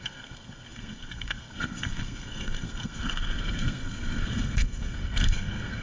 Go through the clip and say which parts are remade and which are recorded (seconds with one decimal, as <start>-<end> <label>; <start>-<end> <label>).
0.0-5.8 remade